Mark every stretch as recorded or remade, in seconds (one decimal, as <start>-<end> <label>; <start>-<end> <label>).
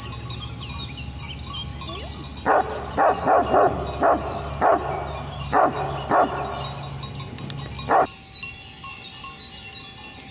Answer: 0.0-10.3 recorded